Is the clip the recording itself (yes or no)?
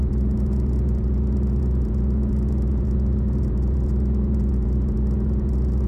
no